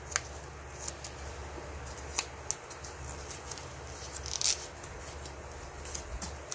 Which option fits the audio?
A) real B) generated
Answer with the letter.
A